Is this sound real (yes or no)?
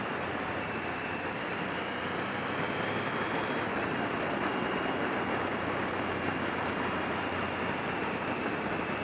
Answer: no